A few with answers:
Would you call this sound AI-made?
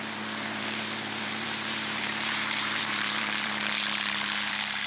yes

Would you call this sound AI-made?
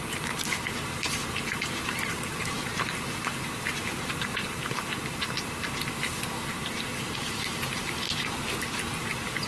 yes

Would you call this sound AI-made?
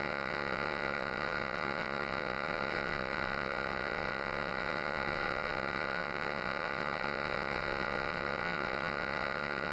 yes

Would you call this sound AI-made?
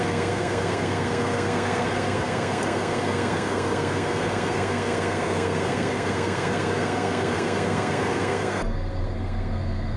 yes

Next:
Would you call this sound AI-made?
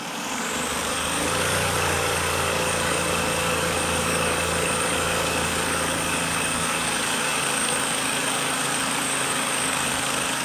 yes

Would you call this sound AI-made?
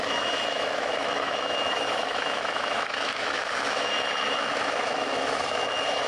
yes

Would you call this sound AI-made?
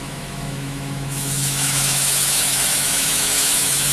yes